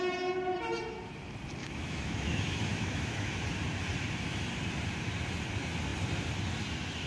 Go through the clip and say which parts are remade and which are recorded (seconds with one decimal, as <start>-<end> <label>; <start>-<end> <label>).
0.0-1.6 recorded; 1.6-3.3 remade; 3.3-7.1 recorded